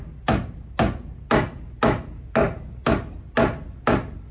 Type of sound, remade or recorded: recorded